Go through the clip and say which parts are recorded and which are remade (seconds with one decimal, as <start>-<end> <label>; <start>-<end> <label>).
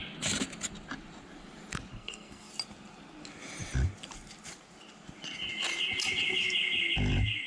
0.0-1.9 recorded; 1.9-2.5 remade; 2.5-7.5 recorded